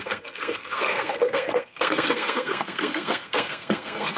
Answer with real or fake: fake